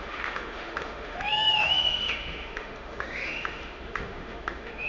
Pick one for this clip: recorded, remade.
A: remade